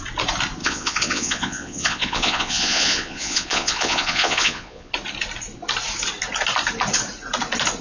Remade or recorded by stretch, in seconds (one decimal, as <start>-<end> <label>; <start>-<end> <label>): 0.0-0.6 recorded; 0.6-4.9 remade; 4.9-7.8 recorded